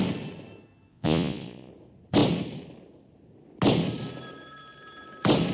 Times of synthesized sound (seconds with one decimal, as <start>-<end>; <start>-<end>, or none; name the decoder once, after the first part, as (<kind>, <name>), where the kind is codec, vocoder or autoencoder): 0.9-1.7 (vocoder, Vocos)